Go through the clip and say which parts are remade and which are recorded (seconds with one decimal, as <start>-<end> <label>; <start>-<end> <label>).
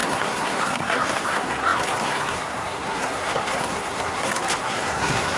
0.0-5.4 remade